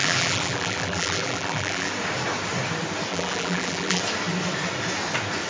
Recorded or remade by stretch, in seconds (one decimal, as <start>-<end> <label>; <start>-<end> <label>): 0.0-1.9 remade; 1.9-3.1 recorded; 3.1-4.0 remade; 4.0-5.5 recorded